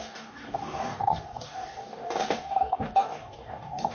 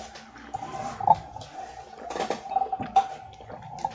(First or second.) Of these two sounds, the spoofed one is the first